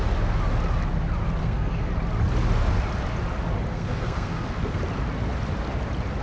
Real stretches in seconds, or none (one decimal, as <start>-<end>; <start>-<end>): 0.0-1.4; 1.9-3.7; 4.8-6.2